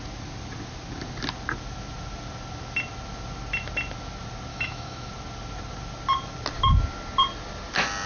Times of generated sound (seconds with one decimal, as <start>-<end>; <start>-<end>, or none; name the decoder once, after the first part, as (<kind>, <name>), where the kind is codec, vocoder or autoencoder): 4.5-5.1 (autoencoder, DAC-VAE)